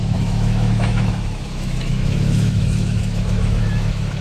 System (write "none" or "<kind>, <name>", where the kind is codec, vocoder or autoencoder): autoencoder, DAC-VAE